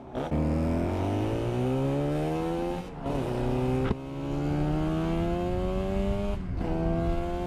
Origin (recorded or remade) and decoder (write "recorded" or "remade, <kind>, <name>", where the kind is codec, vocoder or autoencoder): recorded